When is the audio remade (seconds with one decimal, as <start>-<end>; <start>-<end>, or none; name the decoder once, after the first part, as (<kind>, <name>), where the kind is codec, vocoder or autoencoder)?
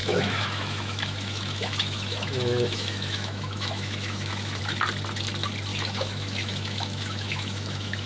0.0-4.6 (autoencoder, DAC-VAE); 5.7-8.1